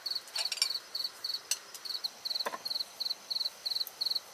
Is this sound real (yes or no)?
yes